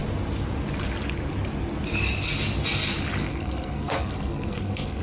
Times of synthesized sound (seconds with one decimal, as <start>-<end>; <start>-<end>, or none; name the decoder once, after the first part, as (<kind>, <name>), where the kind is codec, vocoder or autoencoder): 3.2-5.0 (codec, SNAC)